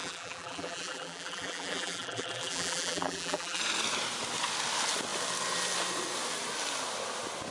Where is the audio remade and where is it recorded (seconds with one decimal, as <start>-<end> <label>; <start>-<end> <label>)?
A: 0.0-3.6 remade; 3.6-7.5 recorded